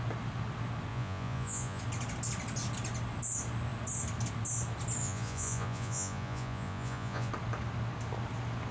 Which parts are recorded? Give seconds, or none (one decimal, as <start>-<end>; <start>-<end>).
0.0-0.9; 1.8-5.0; 7.3-8.7